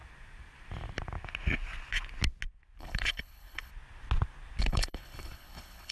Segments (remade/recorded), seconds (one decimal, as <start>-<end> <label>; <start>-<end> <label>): 0.0-2.8 recorded; 2.8-3.7 remade; 3.7-4.6 recorded; 4.6-5.9 remade